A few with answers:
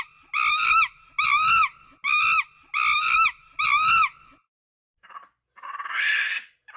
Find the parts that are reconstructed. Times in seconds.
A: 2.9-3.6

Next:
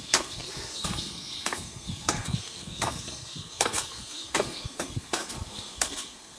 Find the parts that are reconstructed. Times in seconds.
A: 0.0-6.4

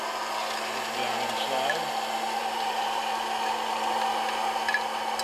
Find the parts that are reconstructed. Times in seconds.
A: 2.4-3.0

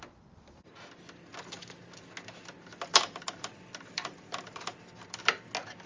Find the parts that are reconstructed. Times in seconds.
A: 2.9-5.5

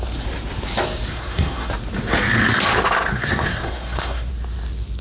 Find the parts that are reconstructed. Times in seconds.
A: 1.1-1.7; 3.1-4.3

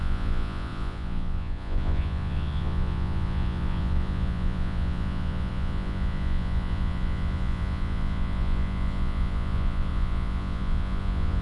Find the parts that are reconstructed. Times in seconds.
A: 0.0-11.4

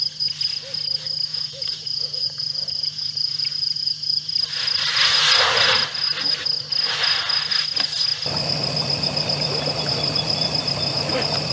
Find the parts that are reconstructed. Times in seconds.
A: 1.3-4.3